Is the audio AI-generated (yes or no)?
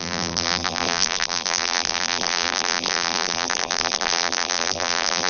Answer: yes